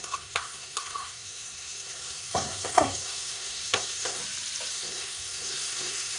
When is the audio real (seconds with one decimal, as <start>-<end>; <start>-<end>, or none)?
4.2-4.7